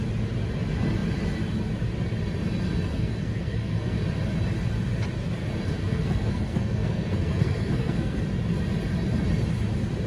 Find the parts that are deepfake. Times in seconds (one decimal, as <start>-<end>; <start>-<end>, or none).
2.9-4.0; 5.8-8.2